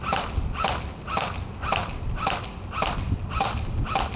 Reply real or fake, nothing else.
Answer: real